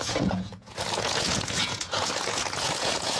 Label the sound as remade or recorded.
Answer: remade